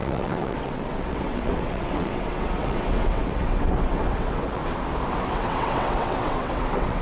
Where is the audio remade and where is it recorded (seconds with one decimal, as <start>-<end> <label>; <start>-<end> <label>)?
0.0-4.6 remade; 4.6-5.2 recorded; 5.2-7.0 remade